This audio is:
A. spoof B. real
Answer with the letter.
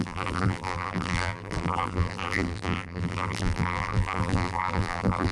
A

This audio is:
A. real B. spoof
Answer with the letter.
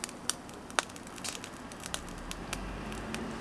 A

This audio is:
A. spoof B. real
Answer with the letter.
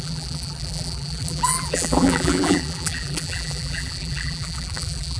A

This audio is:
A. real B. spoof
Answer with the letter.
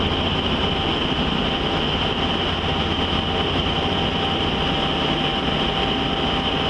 A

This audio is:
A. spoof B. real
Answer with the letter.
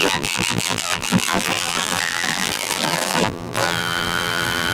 A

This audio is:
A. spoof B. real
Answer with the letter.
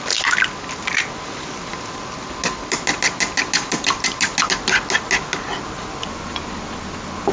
B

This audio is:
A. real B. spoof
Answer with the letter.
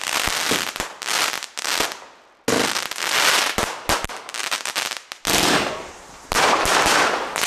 A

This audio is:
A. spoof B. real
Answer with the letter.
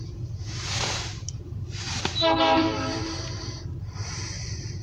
A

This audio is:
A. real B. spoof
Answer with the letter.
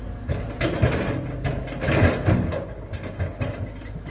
A